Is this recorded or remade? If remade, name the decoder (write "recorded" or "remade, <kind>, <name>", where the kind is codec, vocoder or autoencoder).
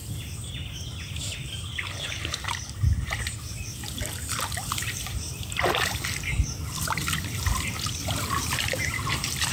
recorded